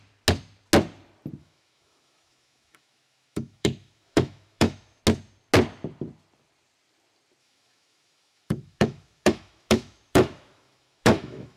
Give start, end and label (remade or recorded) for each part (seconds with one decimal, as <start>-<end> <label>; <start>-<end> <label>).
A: 0.0-1.4 recorded; 1.4-5.0 remade; 5.0-7.4 recorded; 7.4-11.6 remade